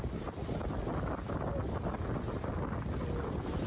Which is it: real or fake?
real